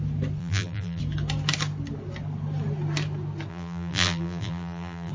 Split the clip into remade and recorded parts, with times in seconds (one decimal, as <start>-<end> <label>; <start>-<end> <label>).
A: 0.0-0.4 recorded; 0.4-1.0 remade; 1.0-3.5 recorded; 3.5-5.1 remade